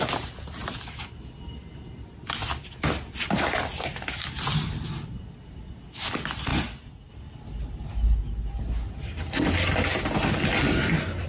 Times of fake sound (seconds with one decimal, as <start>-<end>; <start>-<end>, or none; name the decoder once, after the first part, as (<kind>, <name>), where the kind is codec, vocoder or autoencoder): none